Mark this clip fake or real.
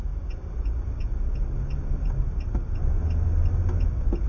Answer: real